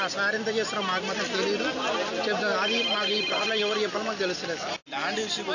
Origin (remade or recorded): recorded